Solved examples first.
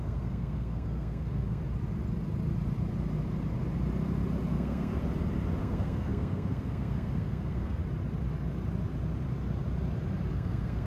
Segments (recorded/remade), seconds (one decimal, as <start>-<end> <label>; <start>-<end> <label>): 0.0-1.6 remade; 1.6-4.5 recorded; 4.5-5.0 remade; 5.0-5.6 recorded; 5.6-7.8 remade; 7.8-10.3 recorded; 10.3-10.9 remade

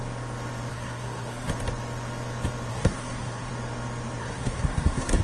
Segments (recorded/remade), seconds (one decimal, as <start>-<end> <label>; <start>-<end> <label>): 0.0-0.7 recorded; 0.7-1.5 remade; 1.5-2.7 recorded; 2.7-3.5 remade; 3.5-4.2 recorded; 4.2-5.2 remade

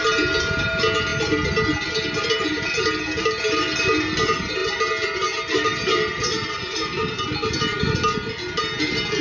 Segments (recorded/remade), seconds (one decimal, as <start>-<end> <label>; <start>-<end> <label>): 0.0-9.2 recorded

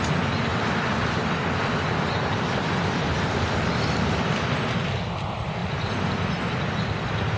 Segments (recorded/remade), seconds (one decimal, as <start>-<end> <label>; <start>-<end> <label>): 0.0-7.4 recorded

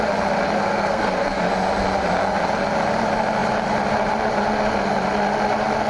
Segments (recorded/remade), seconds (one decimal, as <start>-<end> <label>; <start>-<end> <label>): 0.0-0.6 recorded; 0.6-1.4 remade; 1.4-5.9 recorded

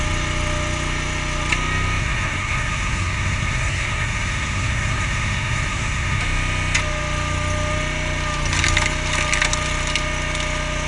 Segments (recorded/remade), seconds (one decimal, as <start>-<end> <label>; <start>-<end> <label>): 0.0-2.0 recorded; 2.0-6.2 remade; 6.2-10.9 recorded

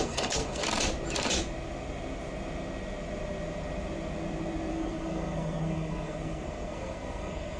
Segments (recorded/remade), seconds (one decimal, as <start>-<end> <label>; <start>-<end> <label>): 0.0-0.6 remade; 0.6-4.7 recorded; 4.7-7.6 remade

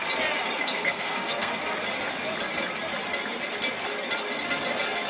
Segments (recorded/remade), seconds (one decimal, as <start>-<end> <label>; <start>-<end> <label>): 0.0-0.6 recorded; 0.6-1.5 remade; 1.5-5.1 recorded